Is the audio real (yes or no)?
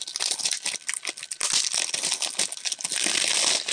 yes